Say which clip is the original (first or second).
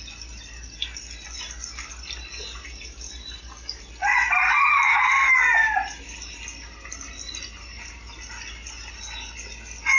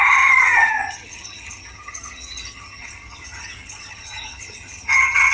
first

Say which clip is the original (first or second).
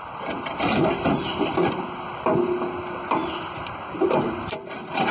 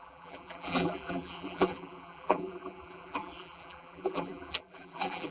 first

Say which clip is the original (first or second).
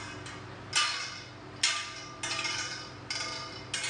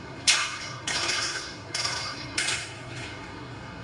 first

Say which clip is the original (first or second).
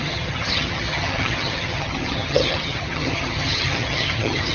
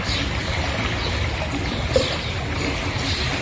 second